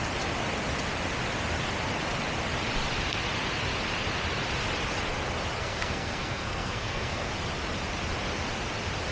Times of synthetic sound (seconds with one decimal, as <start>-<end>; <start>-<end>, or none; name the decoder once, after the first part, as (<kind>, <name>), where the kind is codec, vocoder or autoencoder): 5.6-7.3 (codec, SNAC)